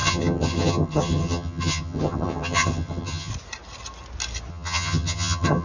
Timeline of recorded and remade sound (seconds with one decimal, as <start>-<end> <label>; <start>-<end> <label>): 0.0-3.3 remade; 3.3-4.5 recorded; 4.5-5.6 remade